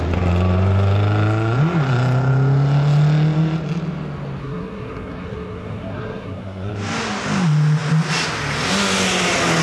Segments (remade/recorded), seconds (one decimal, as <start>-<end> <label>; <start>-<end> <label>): 0.0-4.4 recorded; 4.4-6.7 remade; 6.7-9.6 recorded